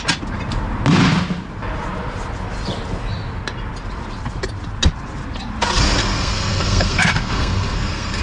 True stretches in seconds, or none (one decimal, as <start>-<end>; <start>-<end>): 0.0-6.0